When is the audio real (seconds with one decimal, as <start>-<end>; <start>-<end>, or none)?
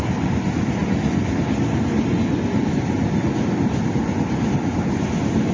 0.0-5.5